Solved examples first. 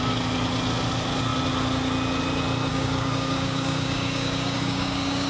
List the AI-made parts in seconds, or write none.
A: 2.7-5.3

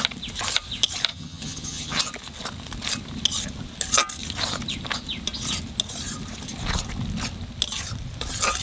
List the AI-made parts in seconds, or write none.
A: 1.1-2.0

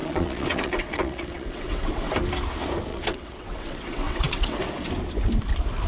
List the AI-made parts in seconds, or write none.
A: 0.0-2.1; 2.9-4.6